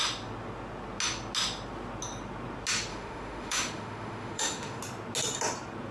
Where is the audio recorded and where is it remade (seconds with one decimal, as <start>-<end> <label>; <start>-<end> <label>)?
0.0-2.9 recorded; 2.9-4.8 remade; 4.8-5.9 recorded